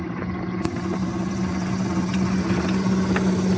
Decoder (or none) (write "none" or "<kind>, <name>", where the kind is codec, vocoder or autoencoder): none